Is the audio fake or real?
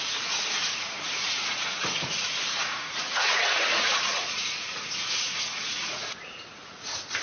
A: fake